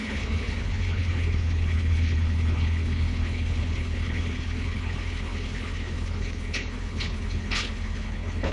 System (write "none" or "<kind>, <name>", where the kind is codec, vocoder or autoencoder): codec, HILCodec